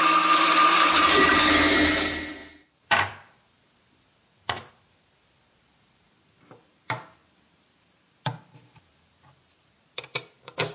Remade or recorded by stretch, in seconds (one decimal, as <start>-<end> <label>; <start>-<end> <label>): 0.0-10.7 remade

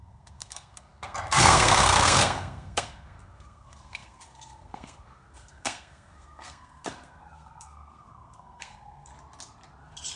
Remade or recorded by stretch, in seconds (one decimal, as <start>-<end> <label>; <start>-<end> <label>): 0.0-9.1 remade; 9.1-10.2 recorded

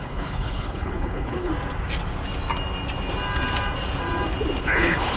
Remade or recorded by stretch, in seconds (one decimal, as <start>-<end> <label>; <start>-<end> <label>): 0.0-1.5 remade; 1.5-4.6 recorded; 4.6-5.2 remade

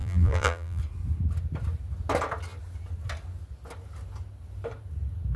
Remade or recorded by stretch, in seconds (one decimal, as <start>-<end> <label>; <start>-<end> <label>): 0.0-0.8 remade; 0.8-5.4 recorded

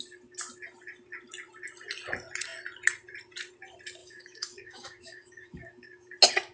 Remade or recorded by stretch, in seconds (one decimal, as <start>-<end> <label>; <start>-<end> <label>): 0.0-4.0 recorded; 4.0-6.1 remade; 6.1-6.5 recorded